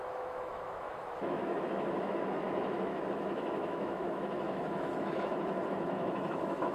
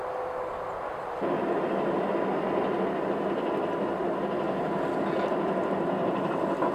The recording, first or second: second